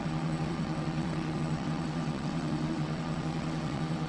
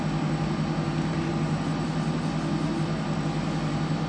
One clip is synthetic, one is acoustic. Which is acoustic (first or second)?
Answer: second